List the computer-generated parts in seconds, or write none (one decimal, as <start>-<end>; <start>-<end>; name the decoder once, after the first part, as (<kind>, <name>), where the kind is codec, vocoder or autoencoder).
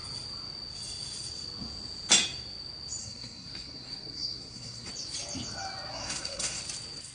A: 3.0-4.9 (codec, SNAC); 5.9-6.6